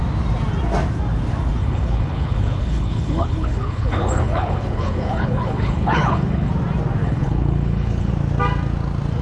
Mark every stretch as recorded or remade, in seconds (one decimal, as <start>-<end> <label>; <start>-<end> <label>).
0.0-1.6 recorded; 1.6-6.5 remade; 6.5-7.0 recorded; 7.0-8.1 remade; 8.1-9.2 recorded

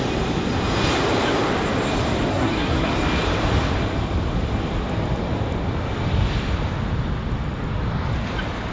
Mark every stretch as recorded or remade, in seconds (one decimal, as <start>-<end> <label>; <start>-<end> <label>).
0.0-2.3 recorded; 2.3-2.9 remade; 2.9-8.7 recorded

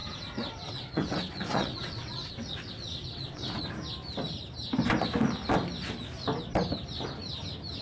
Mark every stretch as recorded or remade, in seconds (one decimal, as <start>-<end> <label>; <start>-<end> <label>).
0.0-3.7 remade; 3.7-7.8 recorded

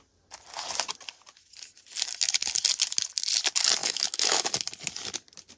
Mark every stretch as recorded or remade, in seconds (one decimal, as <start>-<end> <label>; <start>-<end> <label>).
0.0-3.8 recorded; 3.8-4.5 remade; 4.5-5.6 recorded